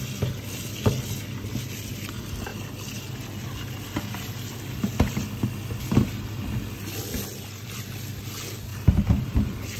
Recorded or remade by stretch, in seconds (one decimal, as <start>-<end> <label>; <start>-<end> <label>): 0.0-8.7 recorded; 8.7-9.8 remade